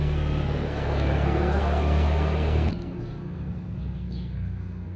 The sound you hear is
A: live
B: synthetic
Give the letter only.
B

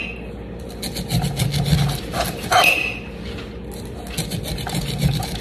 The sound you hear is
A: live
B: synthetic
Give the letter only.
A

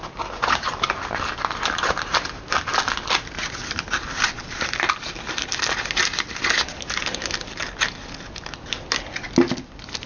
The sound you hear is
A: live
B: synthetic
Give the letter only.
A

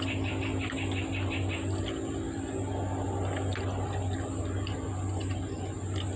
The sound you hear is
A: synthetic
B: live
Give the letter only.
B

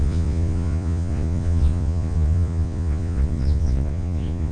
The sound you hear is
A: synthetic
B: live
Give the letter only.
A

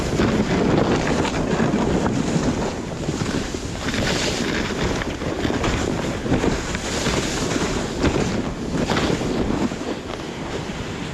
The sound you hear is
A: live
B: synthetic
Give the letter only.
A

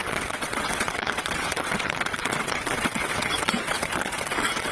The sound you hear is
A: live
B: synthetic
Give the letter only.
B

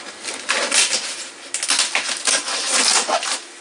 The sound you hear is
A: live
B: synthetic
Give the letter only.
A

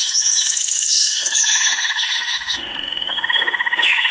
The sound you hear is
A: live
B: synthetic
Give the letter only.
B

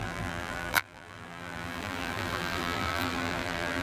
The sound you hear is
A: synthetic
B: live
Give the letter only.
A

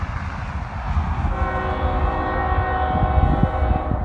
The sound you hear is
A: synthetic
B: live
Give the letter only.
B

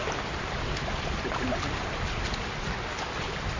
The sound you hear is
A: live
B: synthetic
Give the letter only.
A